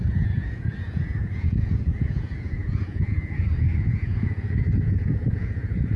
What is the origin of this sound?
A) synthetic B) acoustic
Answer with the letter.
A